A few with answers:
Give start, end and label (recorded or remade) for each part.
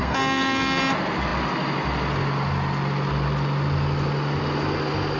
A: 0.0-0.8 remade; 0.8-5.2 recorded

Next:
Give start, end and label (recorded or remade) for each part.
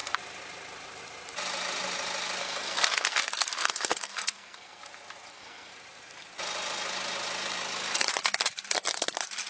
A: 0.0-2.4 recorded; 2.4-4.8 remade; 4.8-5.3 recorded; 5.3-5.7 remade; 5.7-9.5 recorded